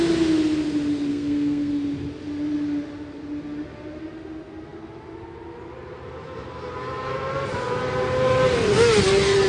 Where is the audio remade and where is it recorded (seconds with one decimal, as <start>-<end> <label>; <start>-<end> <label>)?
0.0-1.1 recorded; 1.1-1.7 remade; 1.7-9.5 recorded